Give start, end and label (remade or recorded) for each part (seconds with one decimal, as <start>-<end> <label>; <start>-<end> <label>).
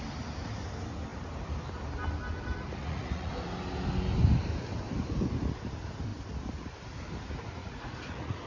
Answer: 0.0-2.8 recorded; 2.8-3.3 remade; 3.3-7.6 recorded; 7.6-8.5 remade